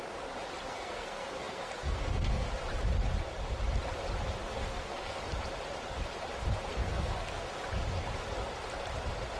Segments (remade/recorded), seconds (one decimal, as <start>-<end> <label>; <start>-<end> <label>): 0.0-0.7 recorded; 0.7-2.5 remade; 2.5-4.5 recorded; 4.5-5.2 remade; 5.2-6.7 recorded; 6.7-7.4 remade; 7.4-9.4 recorded